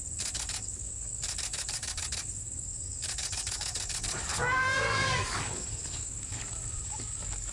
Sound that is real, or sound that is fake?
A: fake